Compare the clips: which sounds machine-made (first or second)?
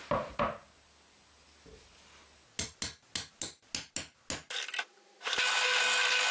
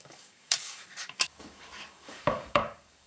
second